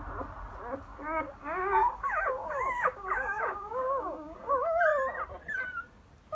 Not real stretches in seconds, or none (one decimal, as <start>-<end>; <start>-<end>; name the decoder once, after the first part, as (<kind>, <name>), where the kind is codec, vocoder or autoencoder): 0.9-4.5 (codec, DAC)